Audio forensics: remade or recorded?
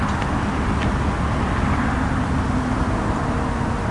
recorded